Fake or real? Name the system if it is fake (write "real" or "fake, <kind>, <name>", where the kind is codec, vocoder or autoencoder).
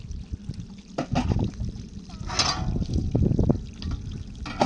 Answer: real